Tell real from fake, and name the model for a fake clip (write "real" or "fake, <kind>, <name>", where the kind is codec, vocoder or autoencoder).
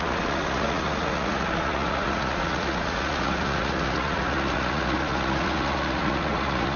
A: fake, vocoder, Vocos